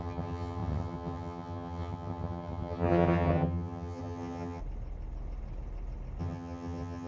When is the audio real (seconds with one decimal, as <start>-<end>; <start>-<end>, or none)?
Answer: 4.6-6.2